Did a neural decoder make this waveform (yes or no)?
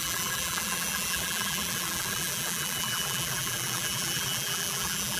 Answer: yes